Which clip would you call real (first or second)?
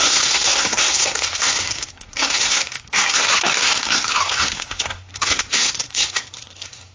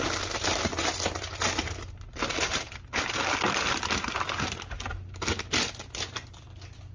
second